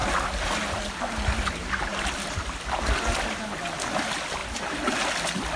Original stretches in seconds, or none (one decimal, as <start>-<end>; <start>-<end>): 0.0-5.6